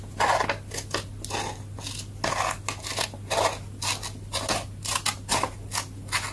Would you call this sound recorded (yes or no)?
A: yes